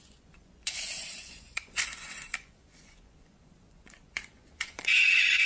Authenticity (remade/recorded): remade